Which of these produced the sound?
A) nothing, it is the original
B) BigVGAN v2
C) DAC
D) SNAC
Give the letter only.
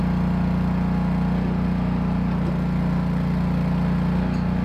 A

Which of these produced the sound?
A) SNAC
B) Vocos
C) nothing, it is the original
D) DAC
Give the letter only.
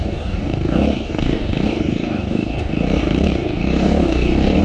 D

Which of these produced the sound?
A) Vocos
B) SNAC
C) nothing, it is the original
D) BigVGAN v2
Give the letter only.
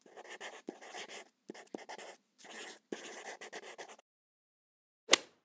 C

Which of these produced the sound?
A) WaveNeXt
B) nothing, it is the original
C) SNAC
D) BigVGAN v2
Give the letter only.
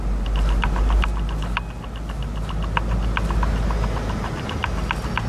B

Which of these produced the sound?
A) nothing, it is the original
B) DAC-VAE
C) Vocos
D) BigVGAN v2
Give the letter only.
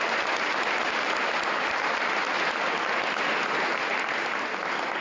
A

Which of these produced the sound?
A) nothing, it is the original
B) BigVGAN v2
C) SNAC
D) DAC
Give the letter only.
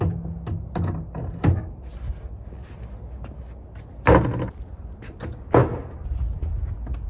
A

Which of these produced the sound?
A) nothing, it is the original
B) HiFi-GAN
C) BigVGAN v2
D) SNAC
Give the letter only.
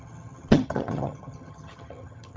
B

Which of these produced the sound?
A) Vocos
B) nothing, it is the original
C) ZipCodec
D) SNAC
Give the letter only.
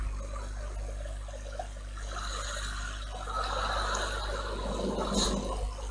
B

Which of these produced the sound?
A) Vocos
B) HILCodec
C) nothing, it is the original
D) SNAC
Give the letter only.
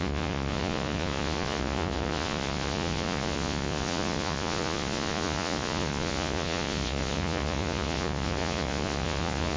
A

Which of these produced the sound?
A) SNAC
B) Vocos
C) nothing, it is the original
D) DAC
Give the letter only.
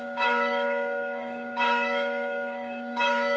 D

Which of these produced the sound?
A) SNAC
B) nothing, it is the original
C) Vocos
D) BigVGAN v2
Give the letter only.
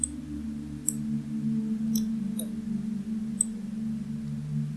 B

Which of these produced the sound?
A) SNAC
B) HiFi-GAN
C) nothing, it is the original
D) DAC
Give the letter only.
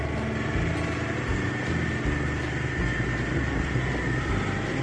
C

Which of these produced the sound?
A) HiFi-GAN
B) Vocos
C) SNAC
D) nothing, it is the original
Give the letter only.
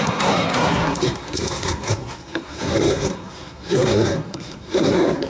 C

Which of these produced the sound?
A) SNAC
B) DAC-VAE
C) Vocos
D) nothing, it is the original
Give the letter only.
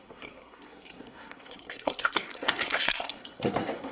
A